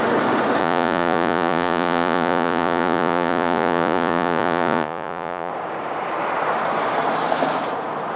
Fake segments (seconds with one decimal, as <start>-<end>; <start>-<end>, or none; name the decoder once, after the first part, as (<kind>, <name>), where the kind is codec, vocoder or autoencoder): 0.6-5.5 (vocoder, Vocos)